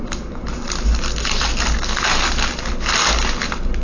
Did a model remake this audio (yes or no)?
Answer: no